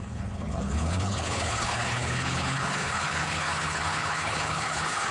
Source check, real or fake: fake